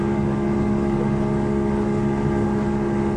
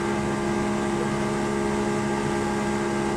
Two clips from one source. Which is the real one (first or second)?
second